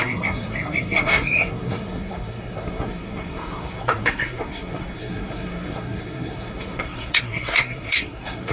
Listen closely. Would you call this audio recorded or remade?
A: remade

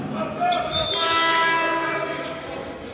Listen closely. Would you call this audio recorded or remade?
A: recorded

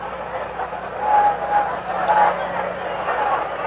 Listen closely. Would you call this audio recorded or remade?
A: recorded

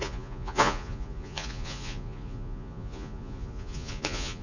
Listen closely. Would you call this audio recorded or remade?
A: remade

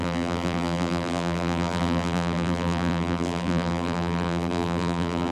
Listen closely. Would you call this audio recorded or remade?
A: remade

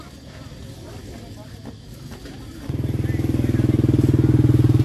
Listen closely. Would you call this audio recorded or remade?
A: recorded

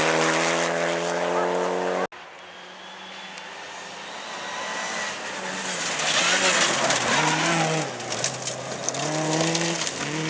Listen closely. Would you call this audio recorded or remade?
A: recorded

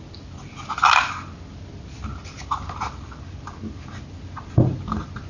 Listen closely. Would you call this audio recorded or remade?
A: recorded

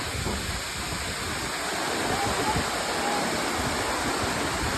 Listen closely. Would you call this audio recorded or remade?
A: recorded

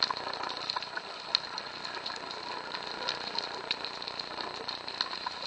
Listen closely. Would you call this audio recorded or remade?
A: recorded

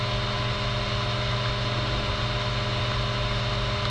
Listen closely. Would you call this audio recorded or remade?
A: recorded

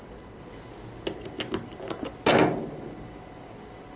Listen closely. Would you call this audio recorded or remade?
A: recorded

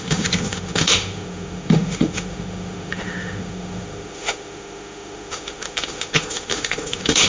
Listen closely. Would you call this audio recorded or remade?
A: remade